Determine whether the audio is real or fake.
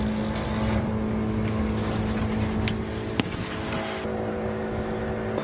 real